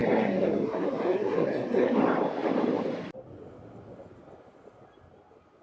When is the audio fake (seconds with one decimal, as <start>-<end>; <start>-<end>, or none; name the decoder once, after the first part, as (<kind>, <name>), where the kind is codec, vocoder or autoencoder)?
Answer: 0.0-2.0 (codec, SNAC)